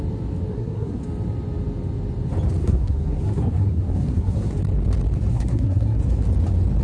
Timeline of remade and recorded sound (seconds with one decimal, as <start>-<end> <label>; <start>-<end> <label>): 0.0-0.5 recorded; 0.5-1.0 remade; 1.0-2.6 recorded; 2.6-4.5 remade; 4.5-5.3 recorded; 5.3-6.0 remade; 6.0-6.8 recorded